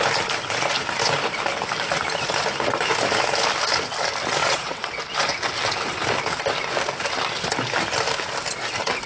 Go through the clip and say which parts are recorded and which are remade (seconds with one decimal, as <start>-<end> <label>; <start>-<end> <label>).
0.0-4.4 recorded; 4.4-5.0 remade; 5.0-9.1 recorded

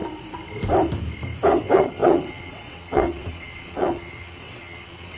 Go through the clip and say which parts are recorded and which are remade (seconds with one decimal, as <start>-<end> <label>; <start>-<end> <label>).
0.0-1.5 recorded; 1.5-5.2 remade